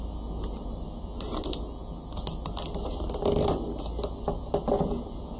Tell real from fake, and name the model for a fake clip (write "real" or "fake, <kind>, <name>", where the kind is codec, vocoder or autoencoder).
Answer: real